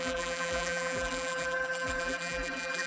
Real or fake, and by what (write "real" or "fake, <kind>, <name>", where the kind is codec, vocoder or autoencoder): fake, vocoder, BigVGAN v2